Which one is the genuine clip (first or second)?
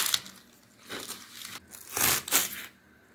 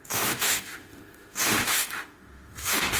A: first